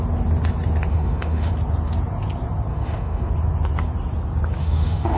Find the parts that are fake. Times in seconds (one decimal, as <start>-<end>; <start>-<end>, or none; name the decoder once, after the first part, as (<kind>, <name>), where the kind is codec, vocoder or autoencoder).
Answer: 0.9-1.5 (autoencoder, DAC-VAE); 2.7-3.3; 4.6-5.2